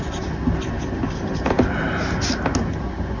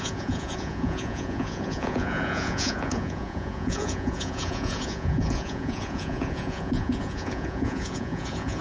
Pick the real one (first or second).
first